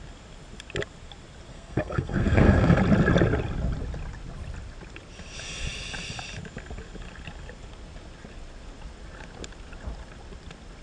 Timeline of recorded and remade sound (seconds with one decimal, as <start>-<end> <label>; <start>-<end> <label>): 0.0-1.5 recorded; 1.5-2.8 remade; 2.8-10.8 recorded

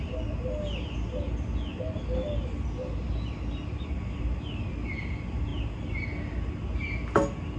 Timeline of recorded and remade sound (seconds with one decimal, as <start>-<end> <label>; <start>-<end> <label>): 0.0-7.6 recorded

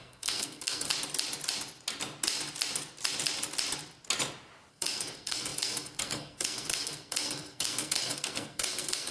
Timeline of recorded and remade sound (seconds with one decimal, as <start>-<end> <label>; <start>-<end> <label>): 0.0-0.9 remade; 0.9-4.7 recorded; 4.7-9.1 remade

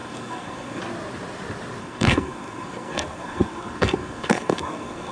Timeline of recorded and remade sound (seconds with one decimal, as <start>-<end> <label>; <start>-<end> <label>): 0.0-0.8 remade; 0.8-1.8 recorded; 1.8-5.1 remade